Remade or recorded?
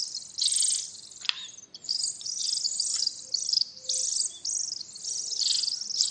recorded